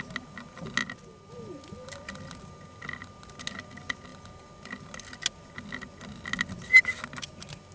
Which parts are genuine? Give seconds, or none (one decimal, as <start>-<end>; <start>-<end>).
0.0-7.7